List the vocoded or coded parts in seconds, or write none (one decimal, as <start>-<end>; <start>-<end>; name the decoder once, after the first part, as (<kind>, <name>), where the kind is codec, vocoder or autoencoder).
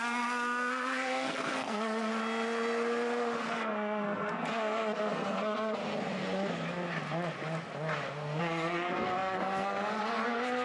0.0-2.1 (codec, SNAC); 3.4-5.8; 8.4-10.6